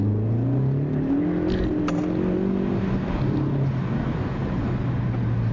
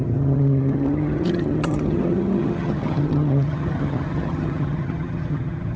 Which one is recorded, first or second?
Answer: first